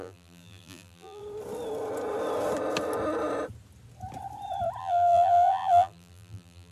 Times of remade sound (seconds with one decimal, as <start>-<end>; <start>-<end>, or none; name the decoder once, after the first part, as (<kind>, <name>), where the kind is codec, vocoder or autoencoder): 0.0-1.2 (vocoder, BigVGAN v2); 4.8-6.7